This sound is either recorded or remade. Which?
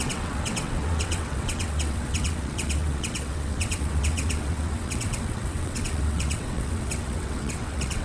remade